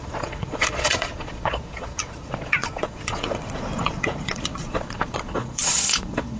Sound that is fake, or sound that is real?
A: fake